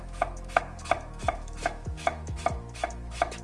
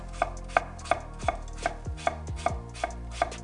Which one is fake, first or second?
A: first